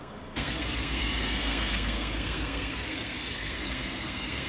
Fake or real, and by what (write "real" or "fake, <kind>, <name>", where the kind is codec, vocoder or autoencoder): fake, codec, SNAC